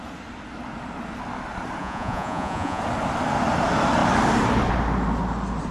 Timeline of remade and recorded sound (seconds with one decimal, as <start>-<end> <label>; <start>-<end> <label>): 0.0-1.8 recorded; 1.8-2.8 remade; 2.8-5.7 recorded